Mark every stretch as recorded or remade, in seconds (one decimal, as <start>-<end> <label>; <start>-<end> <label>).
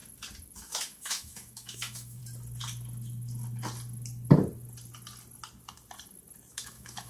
0.0-0.6 recorded; 0.6-2.2 remade; 2.2-6.5 recorded; 6.5-7.1 remade